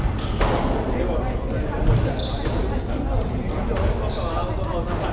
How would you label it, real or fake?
real